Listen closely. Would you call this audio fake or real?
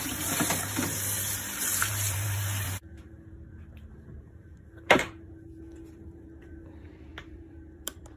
fake